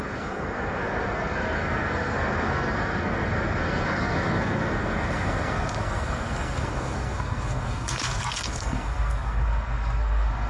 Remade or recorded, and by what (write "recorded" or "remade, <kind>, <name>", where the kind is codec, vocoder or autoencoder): remade, codec, SNAC